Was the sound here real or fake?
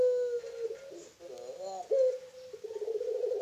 real